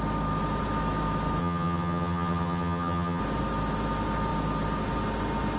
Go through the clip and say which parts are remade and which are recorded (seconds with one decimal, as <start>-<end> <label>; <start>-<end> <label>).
0.0-1.4 recorded; 1.4-3.2 remade; 3.2-5.6 recorded